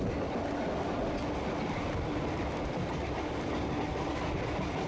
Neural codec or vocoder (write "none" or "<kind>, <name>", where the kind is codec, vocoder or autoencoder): none